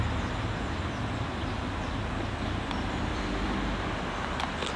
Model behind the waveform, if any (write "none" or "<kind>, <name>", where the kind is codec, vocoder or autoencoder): none